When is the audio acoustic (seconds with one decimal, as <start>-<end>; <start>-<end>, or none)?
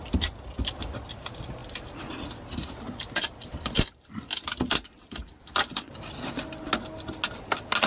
0.0-1.6; 6.3-7.9